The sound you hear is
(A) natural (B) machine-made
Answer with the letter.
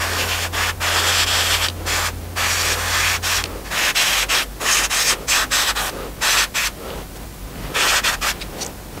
A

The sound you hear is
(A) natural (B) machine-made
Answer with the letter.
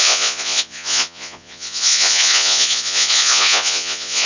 B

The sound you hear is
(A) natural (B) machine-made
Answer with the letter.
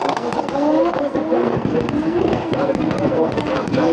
B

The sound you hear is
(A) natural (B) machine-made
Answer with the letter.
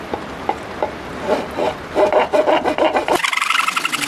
A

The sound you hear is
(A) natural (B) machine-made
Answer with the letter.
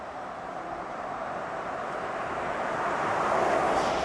B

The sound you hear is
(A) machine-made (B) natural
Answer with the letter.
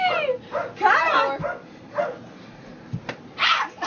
B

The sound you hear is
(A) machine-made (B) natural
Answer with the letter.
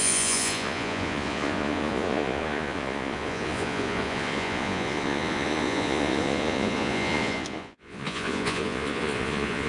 A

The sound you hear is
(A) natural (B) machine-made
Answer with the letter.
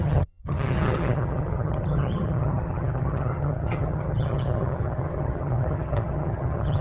B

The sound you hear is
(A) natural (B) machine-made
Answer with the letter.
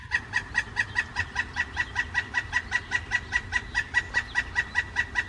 A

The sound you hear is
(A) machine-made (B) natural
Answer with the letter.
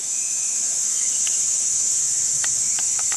A